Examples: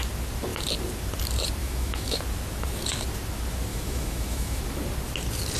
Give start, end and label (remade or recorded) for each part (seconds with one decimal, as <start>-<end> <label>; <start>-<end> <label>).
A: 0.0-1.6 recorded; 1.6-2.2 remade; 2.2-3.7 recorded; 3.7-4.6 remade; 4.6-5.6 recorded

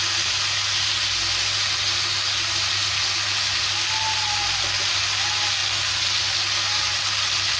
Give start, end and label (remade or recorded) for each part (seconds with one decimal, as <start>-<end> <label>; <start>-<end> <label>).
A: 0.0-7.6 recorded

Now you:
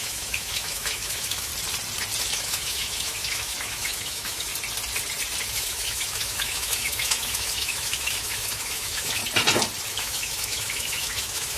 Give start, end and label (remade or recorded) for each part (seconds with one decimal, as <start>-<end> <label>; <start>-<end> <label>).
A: 0.0-1.5 remade; 1.5-2.2 recorded; 2.2-4.5 remade; 4.5-5.4 recorded; 5.4-9.2 remade; 9.2-9.9 recorded; 9.9-11.6 remade

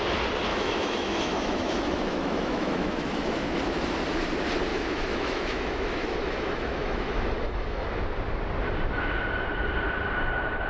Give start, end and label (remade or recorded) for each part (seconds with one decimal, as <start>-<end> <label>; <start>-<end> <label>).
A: 0.0-0.5 recorded; 0.5-3.6 remade; 3.6-4.7 recorded; 4.7-8.0 remade; 8.0-10.7 recorded

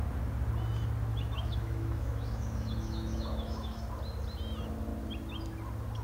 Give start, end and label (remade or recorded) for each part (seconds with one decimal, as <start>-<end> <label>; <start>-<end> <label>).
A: 0.0-1.1 recorded; 1.1-3.8 remade; 3.8-6.0 recorded